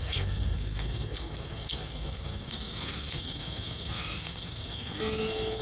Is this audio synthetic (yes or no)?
yes